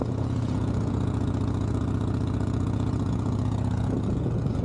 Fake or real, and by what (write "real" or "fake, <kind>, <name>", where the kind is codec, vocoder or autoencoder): fake, vocoder, Vocos